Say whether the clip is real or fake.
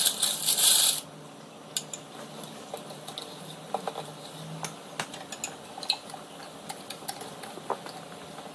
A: real